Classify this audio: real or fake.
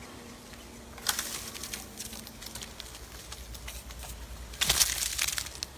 real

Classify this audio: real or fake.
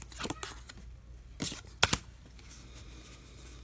real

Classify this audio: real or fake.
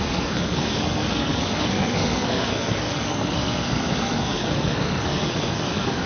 fake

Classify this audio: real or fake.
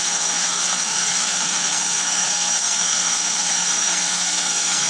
fake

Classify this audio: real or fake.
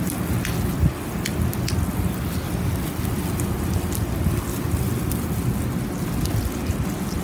real